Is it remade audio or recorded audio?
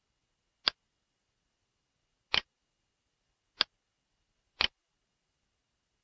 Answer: recorded